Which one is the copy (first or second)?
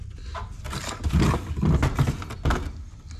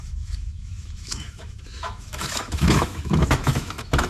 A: second